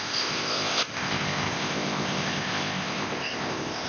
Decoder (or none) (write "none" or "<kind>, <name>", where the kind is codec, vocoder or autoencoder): codec, ZipCodec